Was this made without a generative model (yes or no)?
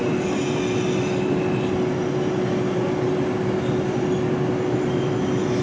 yes